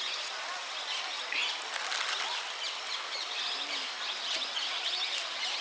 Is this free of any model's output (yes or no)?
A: yes